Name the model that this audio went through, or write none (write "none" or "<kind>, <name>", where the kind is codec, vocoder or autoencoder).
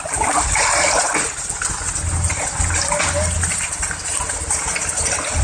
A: none